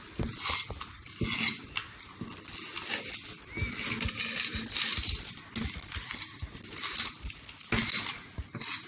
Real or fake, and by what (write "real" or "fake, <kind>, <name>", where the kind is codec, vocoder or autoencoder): real